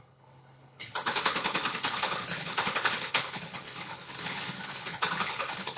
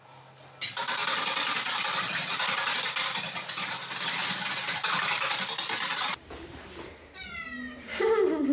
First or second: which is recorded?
second